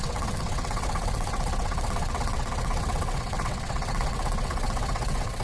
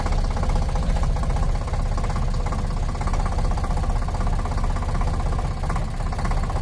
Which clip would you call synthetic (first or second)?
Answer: first